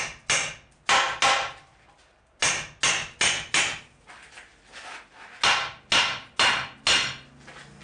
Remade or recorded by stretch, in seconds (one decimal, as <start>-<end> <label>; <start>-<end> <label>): 0.0-7.8 recorded